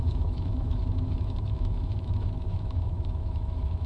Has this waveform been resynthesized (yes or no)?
yes